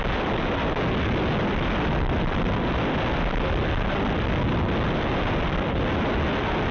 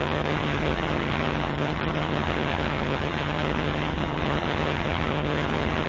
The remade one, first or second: second